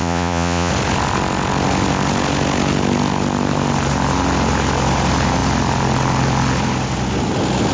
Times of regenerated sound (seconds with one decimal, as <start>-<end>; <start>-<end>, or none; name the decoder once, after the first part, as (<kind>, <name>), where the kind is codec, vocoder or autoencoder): 0.0-0.7 (vocoder, Vocos)